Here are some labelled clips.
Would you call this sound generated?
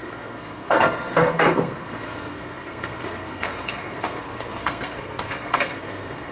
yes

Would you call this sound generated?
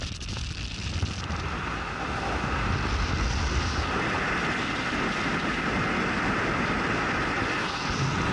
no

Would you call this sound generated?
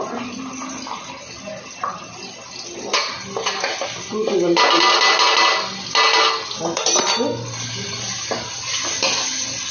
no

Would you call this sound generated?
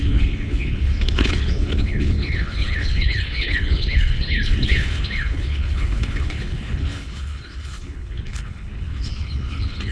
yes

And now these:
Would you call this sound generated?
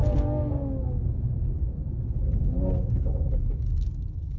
no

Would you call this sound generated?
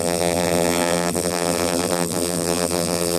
yes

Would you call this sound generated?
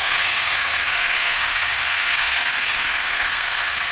yes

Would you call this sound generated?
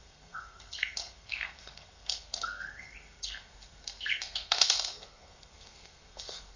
yes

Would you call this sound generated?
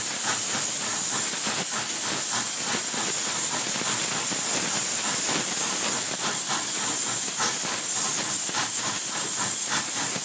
no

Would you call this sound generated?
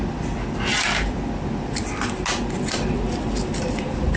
no